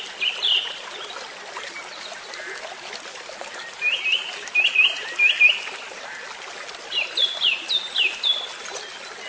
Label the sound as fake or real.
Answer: real